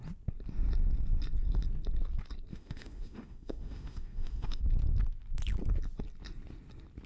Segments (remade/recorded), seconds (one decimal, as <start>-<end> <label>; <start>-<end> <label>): 0.0-2.5 recorded; 2.5-4.6 remade; 4.6-7.1 recorded